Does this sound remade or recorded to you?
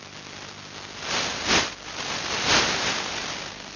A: recorded